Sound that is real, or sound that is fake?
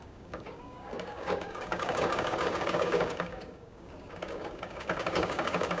fake